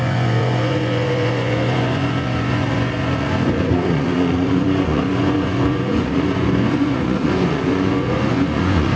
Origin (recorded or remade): remade